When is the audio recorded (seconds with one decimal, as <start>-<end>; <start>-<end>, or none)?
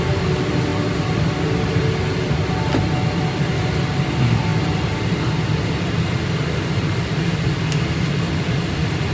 0.7-4.0; 4.5-8.1